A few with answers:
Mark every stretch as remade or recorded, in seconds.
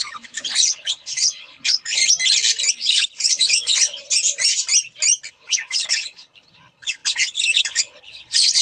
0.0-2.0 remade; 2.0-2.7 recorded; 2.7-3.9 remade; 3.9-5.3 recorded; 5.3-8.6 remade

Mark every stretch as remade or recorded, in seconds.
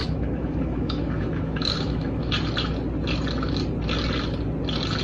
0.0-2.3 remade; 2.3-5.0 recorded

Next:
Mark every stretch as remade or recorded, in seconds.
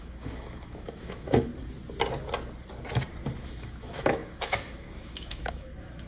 0.0-1.5 remade; 1.5-3.4 recorded; 3.4-6.1 remade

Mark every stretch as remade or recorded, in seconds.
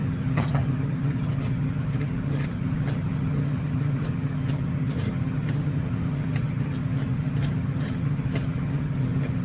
0.0-9.4 remade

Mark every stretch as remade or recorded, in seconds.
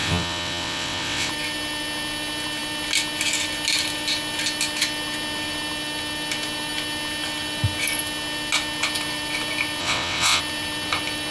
0.0-1.3 remade; 1.3-9.8 recorded; 9.8-10.4 remade; 10.4-11.3 recorded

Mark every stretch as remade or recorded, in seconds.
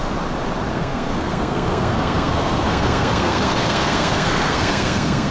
0.0-0.7 recorded; 0.7-5.3 remade